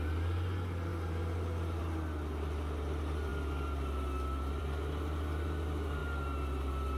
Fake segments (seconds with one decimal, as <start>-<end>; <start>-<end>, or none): none